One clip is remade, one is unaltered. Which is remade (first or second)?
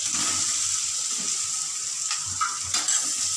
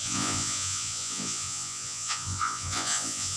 second